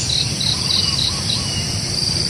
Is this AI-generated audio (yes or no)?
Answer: no